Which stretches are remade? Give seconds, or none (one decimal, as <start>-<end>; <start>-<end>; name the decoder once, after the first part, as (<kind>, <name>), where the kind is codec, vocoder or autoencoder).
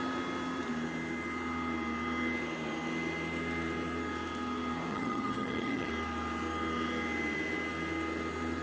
4.9-5.9 (vocoder, HiFi-GAN)